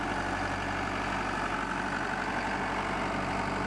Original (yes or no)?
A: yes